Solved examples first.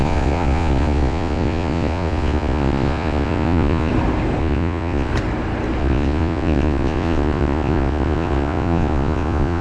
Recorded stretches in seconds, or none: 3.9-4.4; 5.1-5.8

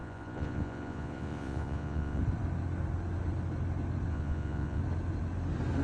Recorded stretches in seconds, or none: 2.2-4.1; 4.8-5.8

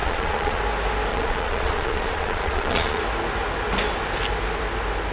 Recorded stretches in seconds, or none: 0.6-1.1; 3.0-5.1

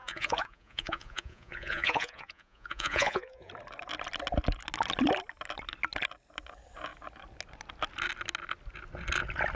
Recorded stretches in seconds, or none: 3.5-9.6

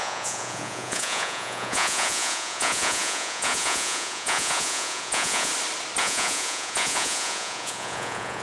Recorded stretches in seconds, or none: 5.5-6.0

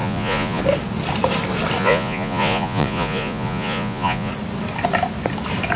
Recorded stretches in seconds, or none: 0.6-1.8; 4.3-5.8

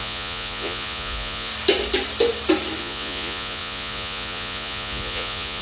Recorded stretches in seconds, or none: 1.5-2.8

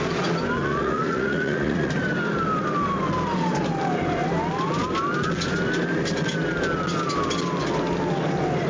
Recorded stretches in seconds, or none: 0.0-0.6; 1.9-8.7